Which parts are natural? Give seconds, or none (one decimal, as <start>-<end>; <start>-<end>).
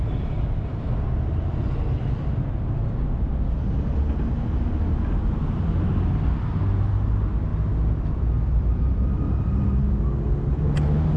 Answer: 0.0-11.2